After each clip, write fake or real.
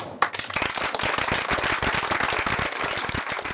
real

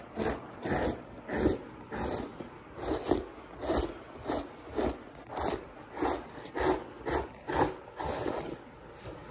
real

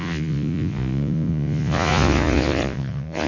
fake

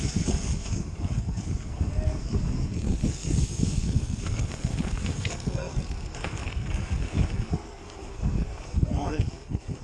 fake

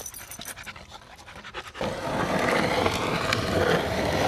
real